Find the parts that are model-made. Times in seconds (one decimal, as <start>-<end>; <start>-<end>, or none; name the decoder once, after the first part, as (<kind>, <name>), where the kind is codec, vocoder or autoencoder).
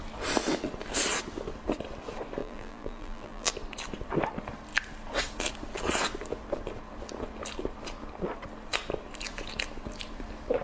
2.4-3.5 (vocoder, BigVGAN v2)